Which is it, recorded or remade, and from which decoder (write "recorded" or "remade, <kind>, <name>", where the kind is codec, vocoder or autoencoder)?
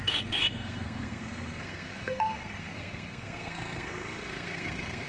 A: remade, codec, SNAC